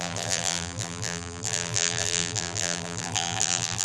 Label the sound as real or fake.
fake